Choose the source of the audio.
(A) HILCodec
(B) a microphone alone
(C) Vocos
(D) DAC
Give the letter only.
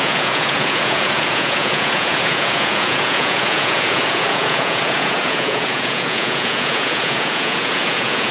C